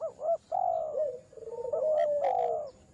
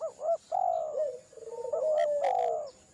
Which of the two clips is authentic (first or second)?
second